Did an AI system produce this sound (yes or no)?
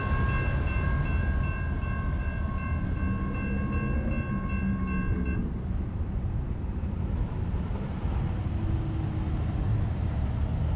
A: no